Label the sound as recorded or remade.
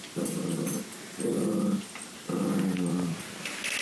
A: recorded